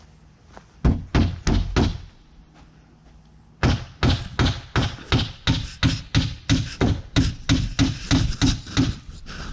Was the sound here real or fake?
real